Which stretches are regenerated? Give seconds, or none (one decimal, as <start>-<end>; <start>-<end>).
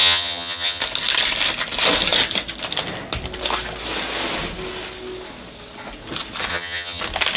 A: 0.0-0.8; 6.5-7.0